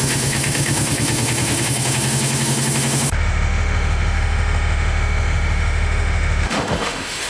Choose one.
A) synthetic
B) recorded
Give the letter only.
A